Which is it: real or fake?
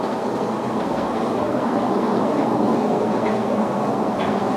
fake